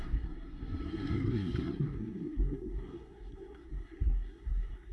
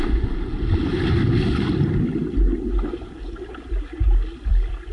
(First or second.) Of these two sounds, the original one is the second